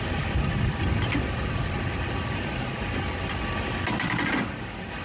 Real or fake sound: real